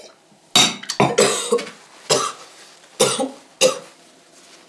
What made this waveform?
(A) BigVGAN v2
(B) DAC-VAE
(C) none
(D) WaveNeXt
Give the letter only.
C